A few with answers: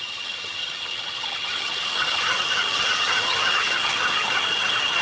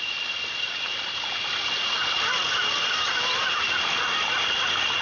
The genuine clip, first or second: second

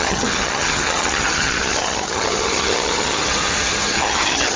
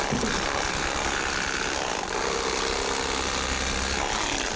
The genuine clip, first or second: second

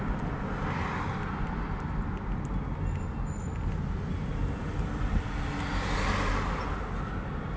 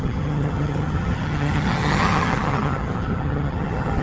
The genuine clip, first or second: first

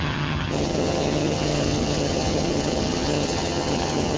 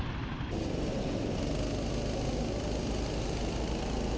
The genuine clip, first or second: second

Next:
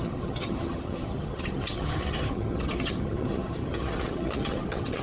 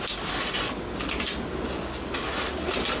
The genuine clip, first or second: second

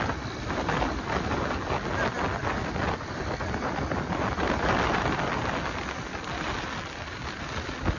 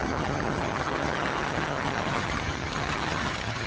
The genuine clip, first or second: first